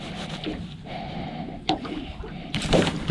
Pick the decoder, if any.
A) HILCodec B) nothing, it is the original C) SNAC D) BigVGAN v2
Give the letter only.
D